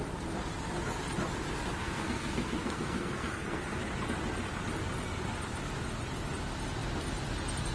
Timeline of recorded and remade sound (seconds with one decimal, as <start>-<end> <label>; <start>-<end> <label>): 0.0-1.8 recorded; 1.8-3.8 remade; 3.8-7.7 recorded